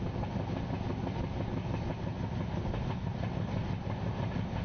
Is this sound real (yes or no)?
yes